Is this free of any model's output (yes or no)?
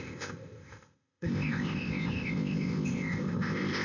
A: no